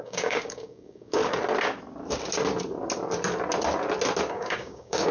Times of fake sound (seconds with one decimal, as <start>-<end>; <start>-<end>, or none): 0.0-1.2; 4.3-5.1